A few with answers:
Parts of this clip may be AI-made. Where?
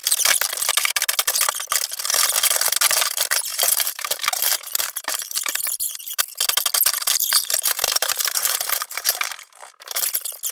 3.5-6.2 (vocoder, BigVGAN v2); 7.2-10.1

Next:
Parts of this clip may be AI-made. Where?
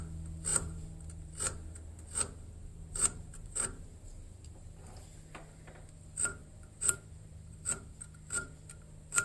0.5-2.0 (vocoder, BigVGAN v2); 2.7-4.8